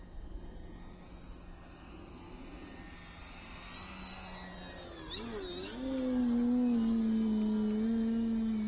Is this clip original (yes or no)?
yes